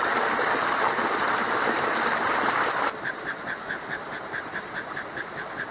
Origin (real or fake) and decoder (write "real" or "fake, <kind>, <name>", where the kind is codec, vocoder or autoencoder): real